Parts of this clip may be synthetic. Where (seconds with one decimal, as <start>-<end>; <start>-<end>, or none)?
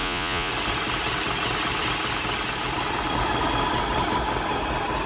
0.0-0.5